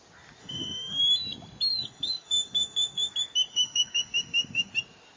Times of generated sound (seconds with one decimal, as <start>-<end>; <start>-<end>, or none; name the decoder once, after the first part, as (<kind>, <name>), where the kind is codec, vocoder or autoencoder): 0.4-1.0 (autoencoder, DAC-VAE); 1.7-3.1; 3.5-4.7